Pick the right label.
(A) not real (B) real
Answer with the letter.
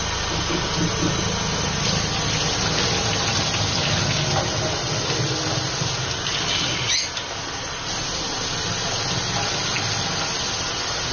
B